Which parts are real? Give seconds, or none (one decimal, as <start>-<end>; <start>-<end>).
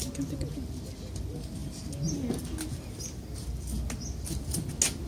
0.0-5.1